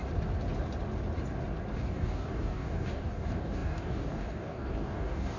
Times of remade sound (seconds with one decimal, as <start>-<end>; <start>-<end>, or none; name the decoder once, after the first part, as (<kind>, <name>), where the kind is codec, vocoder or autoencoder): 1.7-5.4 (codec, DAC)